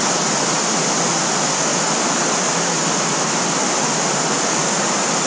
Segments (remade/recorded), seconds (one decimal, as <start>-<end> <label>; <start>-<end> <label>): 0.0-5.3 recorded